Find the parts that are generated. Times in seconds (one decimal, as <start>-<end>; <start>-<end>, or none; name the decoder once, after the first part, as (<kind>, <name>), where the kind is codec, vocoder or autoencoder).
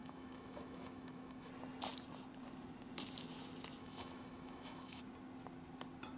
0.0-1.5 (autoencoder, DAC-VAE); 3.8-5.0